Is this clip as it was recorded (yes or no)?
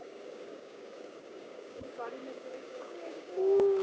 no